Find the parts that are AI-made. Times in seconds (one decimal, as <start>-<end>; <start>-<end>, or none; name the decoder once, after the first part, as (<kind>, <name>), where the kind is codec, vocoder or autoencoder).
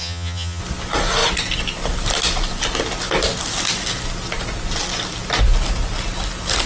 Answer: 0.0-0.6 (vocoder, HiFi-GAN)